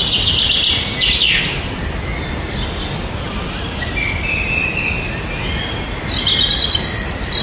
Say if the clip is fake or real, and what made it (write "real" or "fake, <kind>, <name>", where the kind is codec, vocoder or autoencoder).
real